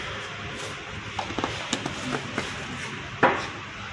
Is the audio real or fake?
real